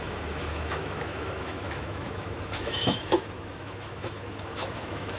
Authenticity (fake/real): fake